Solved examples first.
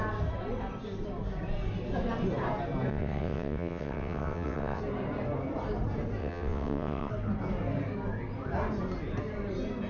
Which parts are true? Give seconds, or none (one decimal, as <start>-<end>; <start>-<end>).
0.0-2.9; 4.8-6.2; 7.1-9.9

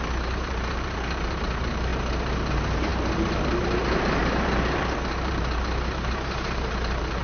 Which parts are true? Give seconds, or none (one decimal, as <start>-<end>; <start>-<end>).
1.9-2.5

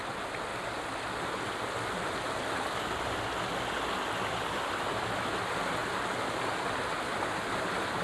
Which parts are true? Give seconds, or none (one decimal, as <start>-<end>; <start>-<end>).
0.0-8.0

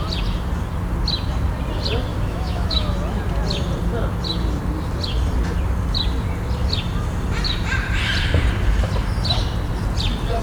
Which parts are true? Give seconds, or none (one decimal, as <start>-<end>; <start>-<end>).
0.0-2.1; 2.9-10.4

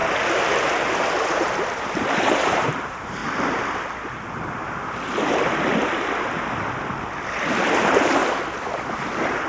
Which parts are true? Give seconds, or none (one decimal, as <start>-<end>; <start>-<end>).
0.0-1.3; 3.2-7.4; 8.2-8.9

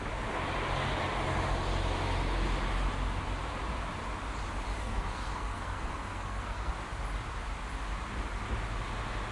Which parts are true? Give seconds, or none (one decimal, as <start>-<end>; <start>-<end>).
0.0-4.8; 6.7-9.3

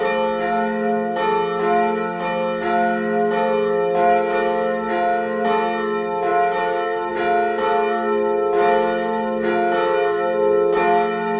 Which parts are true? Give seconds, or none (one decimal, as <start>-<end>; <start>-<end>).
0.0-11.4

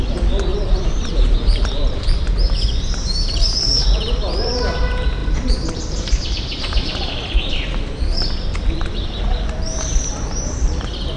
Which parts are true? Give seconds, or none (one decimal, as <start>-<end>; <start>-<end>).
10.1-11.2